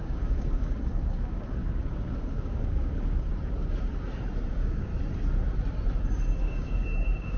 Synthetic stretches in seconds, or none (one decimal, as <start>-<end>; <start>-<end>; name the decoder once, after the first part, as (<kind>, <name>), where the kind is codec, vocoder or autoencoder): 0.0-3.3 (codec, DAC); 4.5-4.9; 6.4-7.4